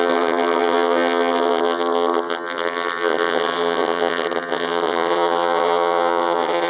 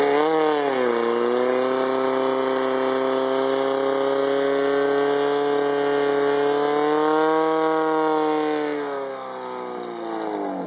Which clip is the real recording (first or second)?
second